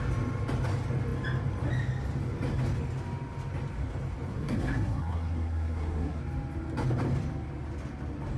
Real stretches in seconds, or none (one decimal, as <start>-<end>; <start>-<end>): 0.0-4.3; 6.2-8.4